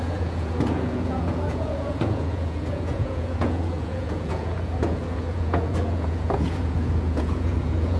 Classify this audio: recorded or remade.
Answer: remade